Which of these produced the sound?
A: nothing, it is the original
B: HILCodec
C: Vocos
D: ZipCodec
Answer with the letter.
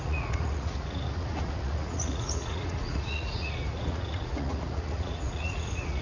C